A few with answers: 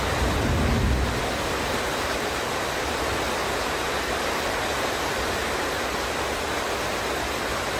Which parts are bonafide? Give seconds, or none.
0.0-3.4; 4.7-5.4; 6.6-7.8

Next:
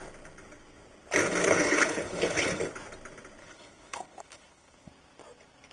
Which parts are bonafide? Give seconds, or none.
0.0-1.4; 2.6-3.4; 4.9-5.7

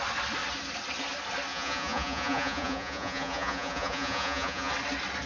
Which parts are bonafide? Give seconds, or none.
0.0-1.5; 4.7-5.3

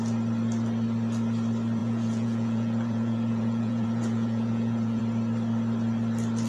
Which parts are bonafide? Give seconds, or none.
0.0-1.8; 5.0-6.5